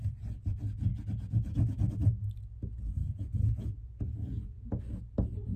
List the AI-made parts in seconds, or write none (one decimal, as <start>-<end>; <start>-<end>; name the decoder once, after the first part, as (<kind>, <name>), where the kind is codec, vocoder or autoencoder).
3.0-4.8 (vocoder, Vocos)